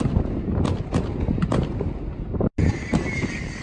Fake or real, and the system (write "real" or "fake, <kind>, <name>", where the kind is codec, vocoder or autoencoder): real